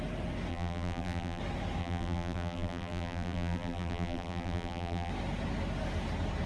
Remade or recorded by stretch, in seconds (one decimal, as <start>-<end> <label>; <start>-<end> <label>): 0.0-0.5 recorded; 0.5-1.4 remade; 1.4-1.8 recorded; 1.8-5.1 remade; 5.1-6.5 recorded